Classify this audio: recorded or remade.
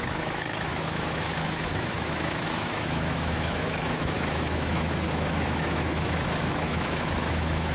remade